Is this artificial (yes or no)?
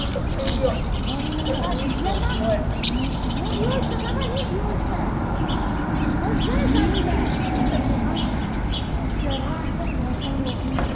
no